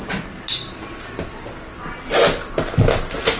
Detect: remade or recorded recorded